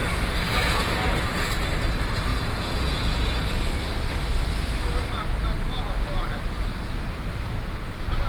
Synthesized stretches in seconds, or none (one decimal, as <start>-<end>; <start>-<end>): 0.0-1.5; 2.3-3.2